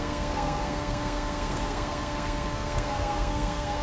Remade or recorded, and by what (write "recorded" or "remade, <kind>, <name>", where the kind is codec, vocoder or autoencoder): remade, codec, SNAC